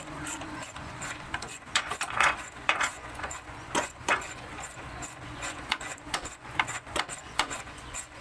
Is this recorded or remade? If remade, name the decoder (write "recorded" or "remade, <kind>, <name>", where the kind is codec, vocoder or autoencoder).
remade, vocoder, Vocos